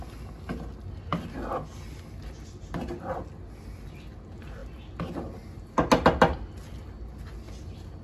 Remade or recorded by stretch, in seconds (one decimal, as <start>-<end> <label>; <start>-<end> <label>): 0.0-8.0 recorded